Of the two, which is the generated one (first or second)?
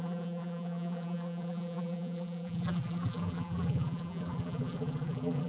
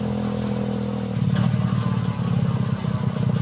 first